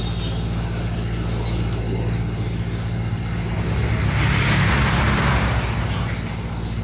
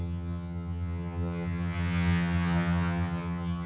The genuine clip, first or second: first